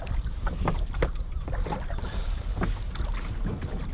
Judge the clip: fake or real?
real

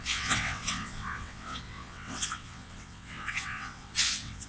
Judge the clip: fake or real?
fake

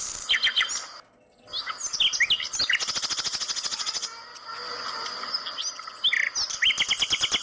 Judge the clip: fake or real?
real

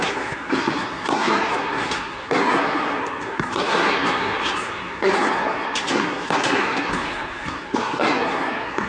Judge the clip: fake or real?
fake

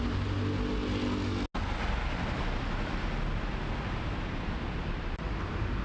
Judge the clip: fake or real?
real